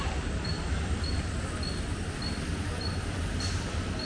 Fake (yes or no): no